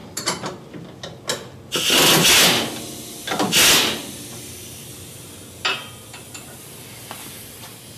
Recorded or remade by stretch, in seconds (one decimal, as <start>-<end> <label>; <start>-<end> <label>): 0.0-0.7 remade; 0.7-8.0 recorded